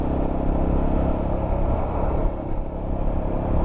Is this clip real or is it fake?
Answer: real